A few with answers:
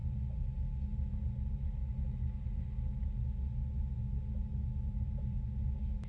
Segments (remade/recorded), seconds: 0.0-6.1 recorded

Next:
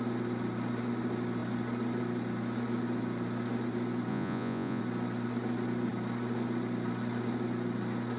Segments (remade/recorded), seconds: 0.0-4.1 recorded; 4.1-4.8 remade; 4.8-8.2 recorded

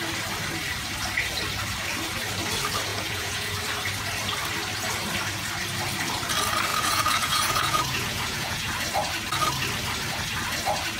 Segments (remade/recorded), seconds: 0.0-2.9 recorded; 2.9-3.6 remade; 3.6-6.7 recorded; 6.7-8.7 remade; 8.7-11.0 recorded

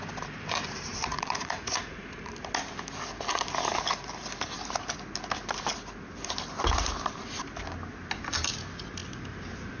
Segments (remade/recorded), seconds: 0.0-0.9 recorded; 0.9-2.3 remade; 2.3-9.8 recorded

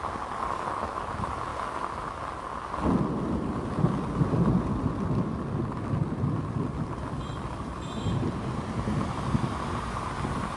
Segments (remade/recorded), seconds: 0.0-10.6 recorded

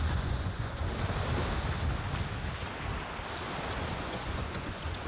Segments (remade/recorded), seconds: 0.0-0.8 remade; 0.8-3.9 recorded; 3.9-5.1 remade

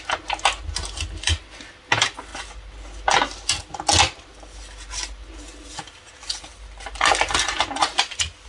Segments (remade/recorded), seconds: 0.0-8.5 recorded